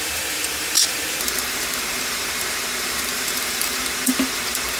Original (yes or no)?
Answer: no